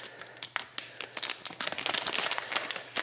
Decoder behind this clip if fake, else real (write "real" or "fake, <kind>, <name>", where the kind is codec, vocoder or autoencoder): real